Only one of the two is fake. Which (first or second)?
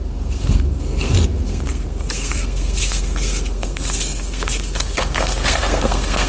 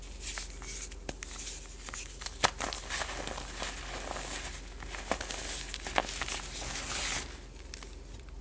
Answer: first